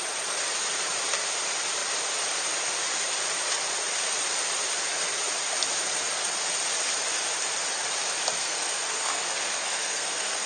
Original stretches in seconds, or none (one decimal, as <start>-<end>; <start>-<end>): 0.0-8.4